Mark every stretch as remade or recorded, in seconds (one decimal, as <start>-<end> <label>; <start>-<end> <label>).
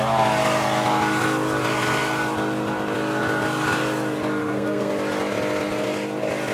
0.0-4.4 recorded; 4.4-4.9 remade; 4.9-6.5 recorded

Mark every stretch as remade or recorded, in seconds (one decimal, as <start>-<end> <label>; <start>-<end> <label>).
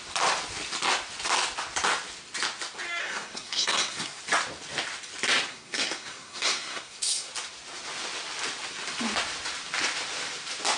0.0-3.0 recorded; 3.0-4.2 remade; 4.2-5.5 recorded; 5.5-7.3 remade; 7.3-10.8 recorded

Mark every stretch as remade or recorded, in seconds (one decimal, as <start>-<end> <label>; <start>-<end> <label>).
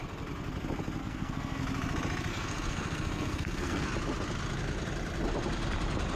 0.0-1.0 recorded; 1.0-1.6 remade; 1.6-2.3 recorded; 2.3-3.9 remade; 3.9-6.2 recorded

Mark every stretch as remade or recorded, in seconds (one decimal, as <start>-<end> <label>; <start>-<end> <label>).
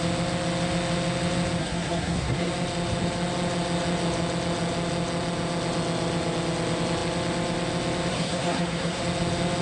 0.0-1.6 recorded; 1.6-2.5 remade; 2.5-8.1 recorded; 8.1-9.0 remade; 9.0-9.6 recorded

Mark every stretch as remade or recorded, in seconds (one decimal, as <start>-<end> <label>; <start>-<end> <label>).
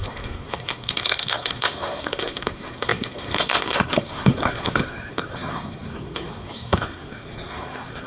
0.0-8.1 remade